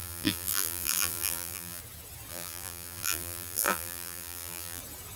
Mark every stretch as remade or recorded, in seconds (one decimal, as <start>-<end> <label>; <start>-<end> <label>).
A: 0.0-1.8 remade; 1.8-2.3 recorded; 2.3-4.8 remade; 4.8-5.2 recorded